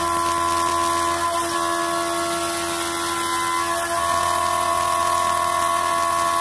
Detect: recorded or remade recorded